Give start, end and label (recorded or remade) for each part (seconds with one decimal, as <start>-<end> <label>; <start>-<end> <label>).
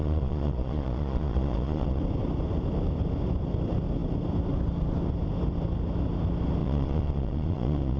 0.0-2.0 remade; 2.0-6.6 recorded; 6.6-8.0 remade